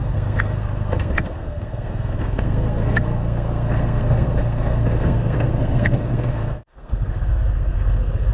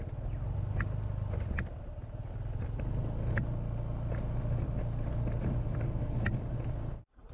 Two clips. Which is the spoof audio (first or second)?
first